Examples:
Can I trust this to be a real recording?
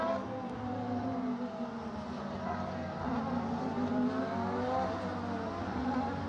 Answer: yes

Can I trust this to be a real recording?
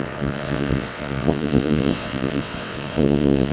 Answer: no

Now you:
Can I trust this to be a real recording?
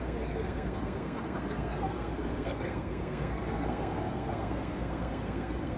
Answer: no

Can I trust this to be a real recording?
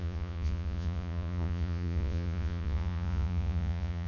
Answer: no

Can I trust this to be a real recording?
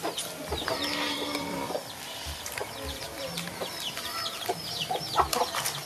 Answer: no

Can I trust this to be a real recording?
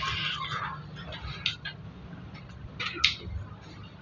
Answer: yes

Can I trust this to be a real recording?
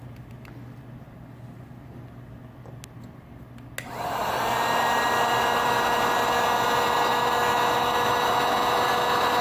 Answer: yes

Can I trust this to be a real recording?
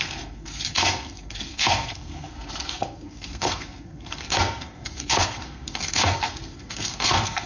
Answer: no